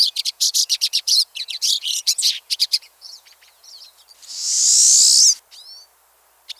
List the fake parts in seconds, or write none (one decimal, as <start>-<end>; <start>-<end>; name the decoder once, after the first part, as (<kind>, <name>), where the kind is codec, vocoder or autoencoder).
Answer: 0.0-4.0 (vocoder, Vocos)